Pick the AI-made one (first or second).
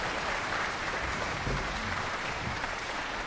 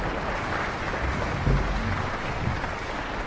first